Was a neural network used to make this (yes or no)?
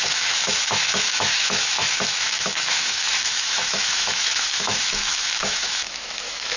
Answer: yes